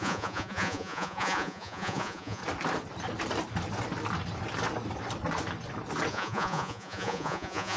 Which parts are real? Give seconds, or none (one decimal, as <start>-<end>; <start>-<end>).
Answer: 2.4-6.1

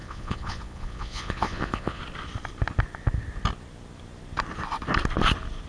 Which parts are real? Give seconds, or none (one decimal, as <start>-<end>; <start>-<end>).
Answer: 2.0-5.7

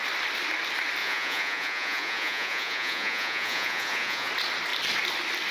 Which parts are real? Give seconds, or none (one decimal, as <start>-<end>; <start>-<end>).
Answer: 0.0-1.0; 4.3-5.5

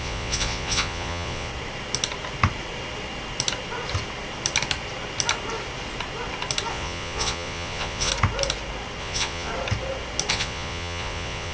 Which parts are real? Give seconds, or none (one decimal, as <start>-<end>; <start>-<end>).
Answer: 1.5-6.7; 8.1-9.0; 9.5-10.3

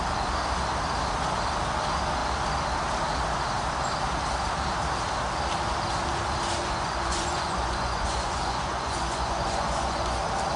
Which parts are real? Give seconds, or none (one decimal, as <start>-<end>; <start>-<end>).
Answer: 0.0-6.6; 10.2-10.6

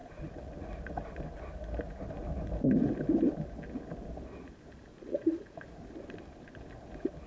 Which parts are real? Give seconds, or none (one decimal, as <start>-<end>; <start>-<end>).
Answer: 0.7-4.9; 5.6-7.3

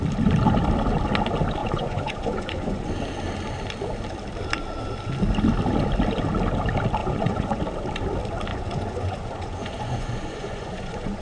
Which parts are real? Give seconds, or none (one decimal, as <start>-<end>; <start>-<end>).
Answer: 0.0-1.6; 2.9-7.0; 7.6-8.5